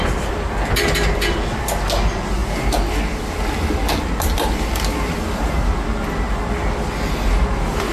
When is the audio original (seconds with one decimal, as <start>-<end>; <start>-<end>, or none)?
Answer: 0.0-7.9